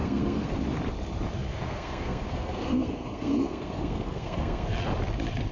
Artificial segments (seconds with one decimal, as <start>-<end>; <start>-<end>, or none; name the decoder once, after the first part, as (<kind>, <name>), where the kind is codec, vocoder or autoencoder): 0.0-0.6 (codec, SNAC); 1.5-4.8